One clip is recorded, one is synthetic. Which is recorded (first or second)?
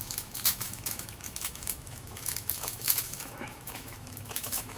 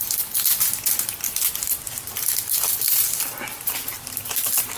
second